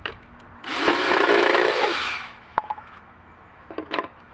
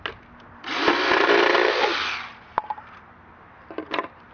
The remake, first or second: first